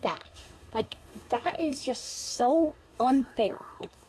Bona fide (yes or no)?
no